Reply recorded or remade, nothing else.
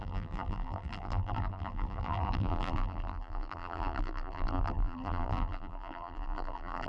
remade